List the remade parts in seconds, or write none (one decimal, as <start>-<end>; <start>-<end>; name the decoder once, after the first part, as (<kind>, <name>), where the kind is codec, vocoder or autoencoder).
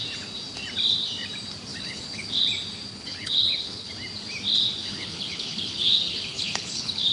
1.7-2.4 (codec, HILCodec); 2.9-3.9; 4.8-7.1